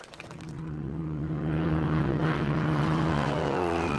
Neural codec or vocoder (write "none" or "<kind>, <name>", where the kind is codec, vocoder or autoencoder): vocoder, WaveNeXt